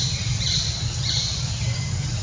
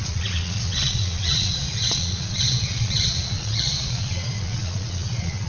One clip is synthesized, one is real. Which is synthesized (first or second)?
second